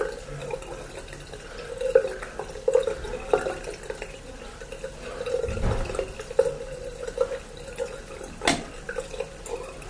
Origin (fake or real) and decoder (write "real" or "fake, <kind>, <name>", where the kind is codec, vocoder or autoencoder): real